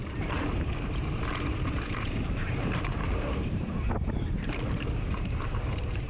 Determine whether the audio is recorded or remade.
remade